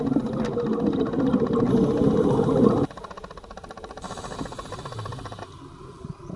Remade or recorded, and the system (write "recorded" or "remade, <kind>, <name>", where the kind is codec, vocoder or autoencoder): recorded